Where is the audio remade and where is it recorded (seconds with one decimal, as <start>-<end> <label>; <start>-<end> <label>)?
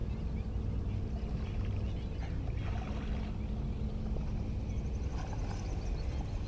0.0-6.5 recorded